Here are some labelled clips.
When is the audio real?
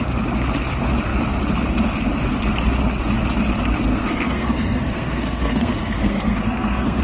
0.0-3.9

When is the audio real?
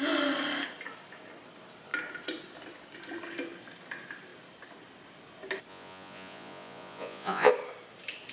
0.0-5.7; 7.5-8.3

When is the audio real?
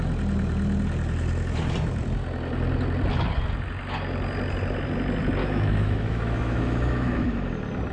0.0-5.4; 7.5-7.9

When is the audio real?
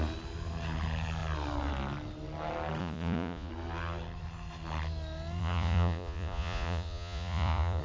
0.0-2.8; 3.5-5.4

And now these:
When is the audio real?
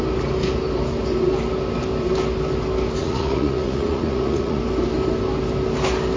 0.0-3.0; 4.6-6.2